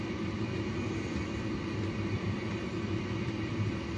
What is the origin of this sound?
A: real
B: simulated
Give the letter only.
B